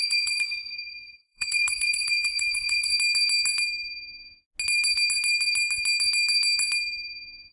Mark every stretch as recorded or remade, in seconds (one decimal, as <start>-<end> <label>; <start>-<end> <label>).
0.0-2.9 remade; 2.9-7.5 recorded